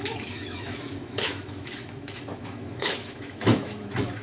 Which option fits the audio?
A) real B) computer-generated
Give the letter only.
B